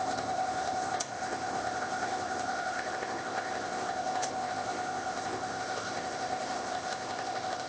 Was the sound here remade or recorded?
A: remade